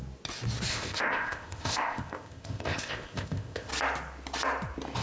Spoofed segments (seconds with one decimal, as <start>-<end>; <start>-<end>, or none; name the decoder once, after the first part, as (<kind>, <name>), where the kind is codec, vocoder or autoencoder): 0.7-3.7 (codec, ZipCodec)